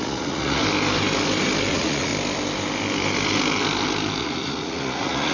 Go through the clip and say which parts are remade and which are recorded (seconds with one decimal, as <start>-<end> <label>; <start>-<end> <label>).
0.0-0.6 remade; 0.6-1.7 recorded; 1.7-2.1 remade; 2.1-4.2 recorded; 4.2-5.3 remade